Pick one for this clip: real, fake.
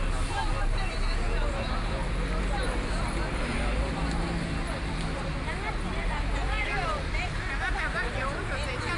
real